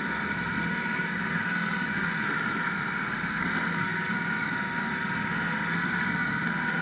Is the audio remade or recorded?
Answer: remade